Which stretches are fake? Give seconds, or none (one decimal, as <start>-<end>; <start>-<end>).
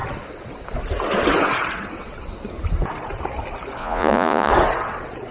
3.8-4.5